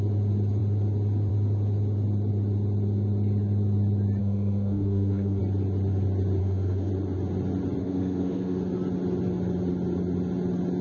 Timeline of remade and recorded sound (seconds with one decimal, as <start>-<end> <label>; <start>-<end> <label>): 0.0-4.2 recorded; 4.2-5.4 remade; 5.4-6.4 recorded; 6.4-6.9 remade; 6.9-7.8 recorded; 7.8-8.6 remade; 8.6-10.8 recorded